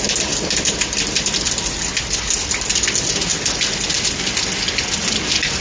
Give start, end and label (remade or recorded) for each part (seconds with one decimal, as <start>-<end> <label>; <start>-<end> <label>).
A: 0.0-5.6 recorded